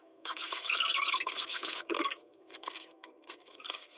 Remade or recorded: remade